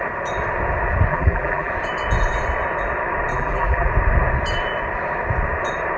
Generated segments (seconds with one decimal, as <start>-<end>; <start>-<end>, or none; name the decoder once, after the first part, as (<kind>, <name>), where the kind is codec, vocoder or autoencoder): 1.1-1.7 (vocoder, BigVGAN v2); 3.3-3.9